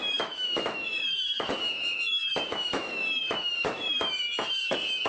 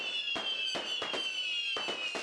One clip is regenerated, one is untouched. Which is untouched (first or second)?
second